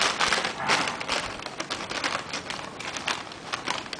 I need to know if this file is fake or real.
real